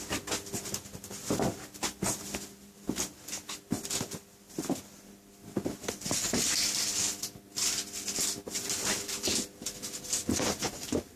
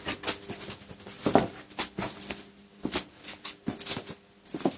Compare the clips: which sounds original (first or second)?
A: first